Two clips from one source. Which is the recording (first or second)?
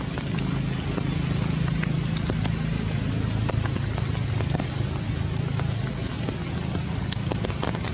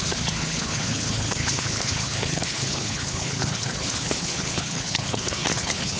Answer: first